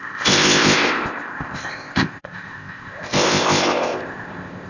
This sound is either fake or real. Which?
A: fake